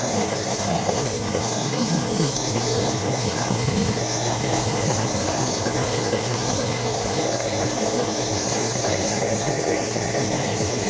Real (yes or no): no